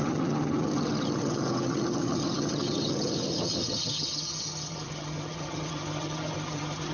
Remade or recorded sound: remade